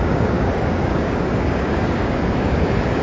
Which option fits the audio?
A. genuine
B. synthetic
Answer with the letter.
B